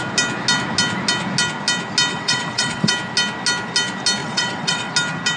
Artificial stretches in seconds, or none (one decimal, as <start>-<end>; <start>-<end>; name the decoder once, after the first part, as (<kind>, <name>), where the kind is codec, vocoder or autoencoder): 2.1-2.9 (vocoder, WaveNeXt); 4.2-4.9